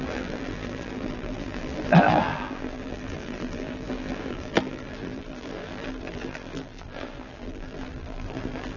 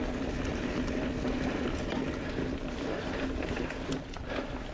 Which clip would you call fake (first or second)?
first